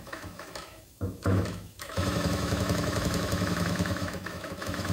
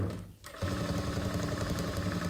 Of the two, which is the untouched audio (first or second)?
second